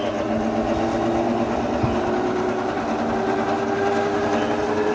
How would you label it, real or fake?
real